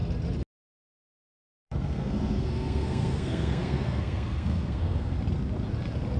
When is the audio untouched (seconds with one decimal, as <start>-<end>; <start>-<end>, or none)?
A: 0.0-1.5; 5.2-6.2